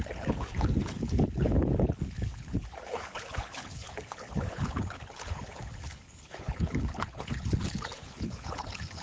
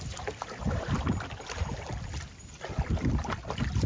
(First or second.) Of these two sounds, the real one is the second